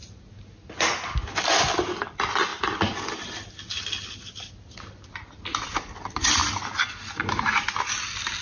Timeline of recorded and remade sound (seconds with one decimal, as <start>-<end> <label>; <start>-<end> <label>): 0.0-8.4 recorded

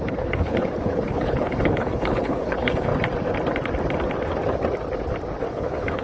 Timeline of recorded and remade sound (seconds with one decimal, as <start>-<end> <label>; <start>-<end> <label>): 0.0-2.9 remade; 2.9-5.5 recorded; 5.5-6.0 remade

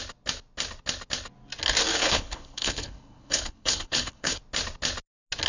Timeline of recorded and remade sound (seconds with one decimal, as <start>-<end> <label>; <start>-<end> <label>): 0.0-1.9 recorded; 1.9-4.4 remade; 4.4-5.5 recorded

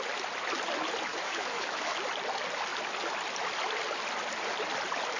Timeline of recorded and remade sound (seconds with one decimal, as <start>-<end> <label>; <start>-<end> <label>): 0.0-1.1 recorded; 1.1-1.9 remade; 1.9-5.2 recorded